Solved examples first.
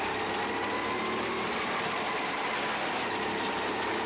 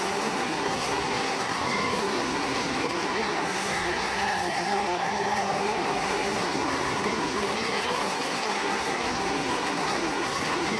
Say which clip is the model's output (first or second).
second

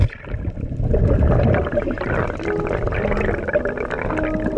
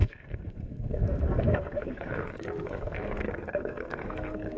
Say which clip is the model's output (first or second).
second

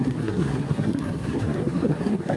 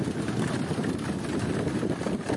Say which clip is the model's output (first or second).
first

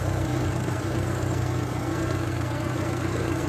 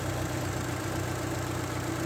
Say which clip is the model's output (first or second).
first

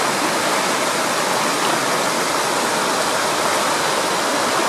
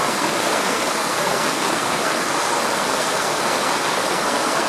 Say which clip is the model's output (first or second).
second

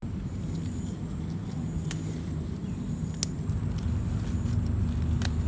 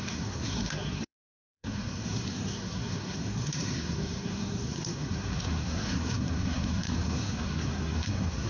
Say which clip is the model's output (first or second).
second